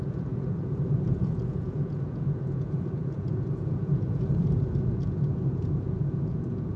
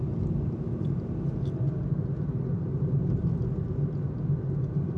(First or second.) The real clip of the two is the second